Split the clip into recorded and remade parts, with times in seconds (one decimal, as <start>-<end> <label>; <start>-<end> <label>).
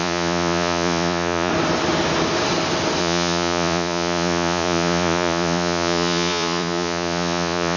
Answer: 0.0-1.5 remade; 1.5-3.0 recorded; 3.0-7.8 remade